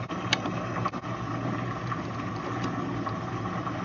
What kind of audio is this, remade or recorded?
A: recorded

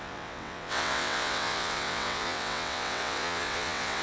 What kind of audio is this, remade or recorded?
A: remade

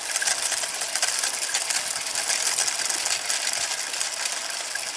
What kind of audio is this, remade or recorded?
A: recorded